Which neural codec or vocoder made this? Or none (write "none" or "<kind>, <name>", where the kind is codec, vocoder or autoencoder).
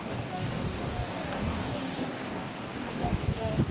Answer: codec, DAC